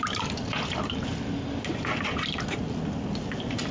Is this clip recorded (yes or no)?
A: yes